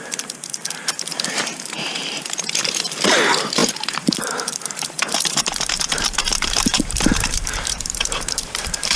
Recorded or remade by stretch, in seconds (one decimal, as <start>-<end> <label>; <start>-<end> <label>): 0.0-9.0 remade